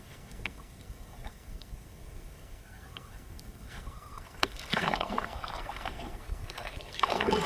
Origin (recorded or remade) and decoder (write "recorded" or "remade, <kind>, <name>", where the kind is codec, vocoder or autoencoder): remade, codec, SNAC